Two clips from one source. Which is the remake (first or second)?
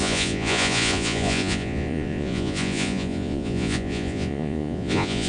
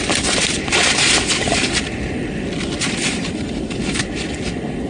first